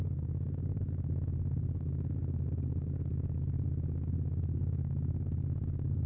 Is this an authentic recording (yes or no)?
no